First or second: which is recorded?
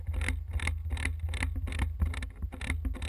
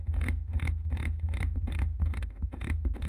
first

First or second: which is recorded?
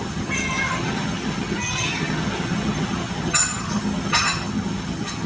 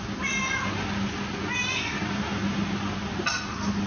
second